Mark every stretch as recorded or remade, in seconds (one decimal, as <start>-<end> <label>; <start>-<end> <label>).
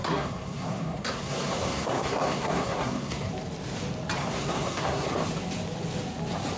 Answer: 0.0-3.3 remade; 3.3-4.2 recorded; 4.2-5.1 remade; 5.1-6.6 recorded